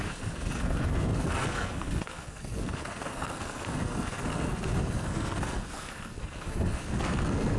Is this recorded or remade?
remade